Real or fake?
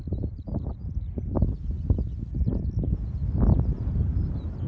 real